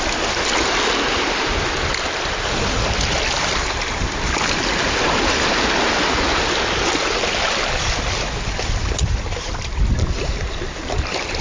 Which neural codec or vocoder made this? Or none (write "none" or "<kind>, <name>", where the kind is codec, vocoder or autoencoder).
none